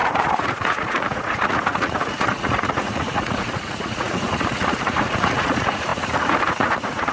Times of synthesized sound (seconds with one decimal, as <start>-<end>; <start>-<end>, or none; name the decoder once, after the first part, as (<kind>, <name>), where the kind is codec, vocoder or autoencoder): 0.0-7.1 (vocoder, Vocos)